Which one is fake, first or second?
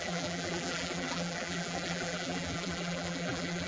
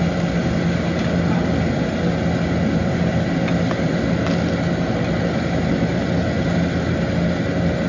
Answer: first